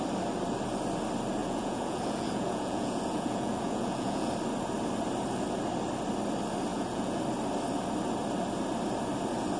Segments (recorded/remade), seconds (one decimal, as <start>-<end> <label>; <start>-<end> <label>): 0.0-1.4 recorded; 1.4-4.3 remade; 4.3-6.7 recorded; 6.7-7.2 remade; 7.2-9.6 recorded